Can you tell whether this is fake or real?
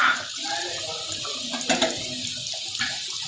real